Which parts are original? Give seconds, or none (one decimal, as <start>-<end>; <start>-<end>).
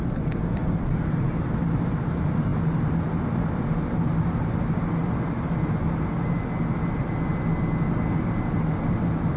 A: 0.0-9.4